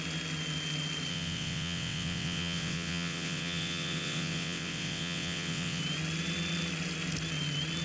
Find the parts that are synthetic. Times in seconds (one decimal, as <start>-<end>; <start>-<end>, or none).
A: 1.1-5.8